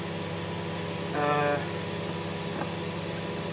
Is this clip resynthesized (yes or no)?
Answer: no